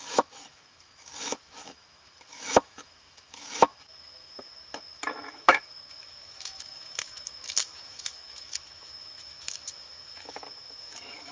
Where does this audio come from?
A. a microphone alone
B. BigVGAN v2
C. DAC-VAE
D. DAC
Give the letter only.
C